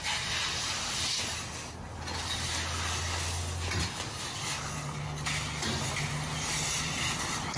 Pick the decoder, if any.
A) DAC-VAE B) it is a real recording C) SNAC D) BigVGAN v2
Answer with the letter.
B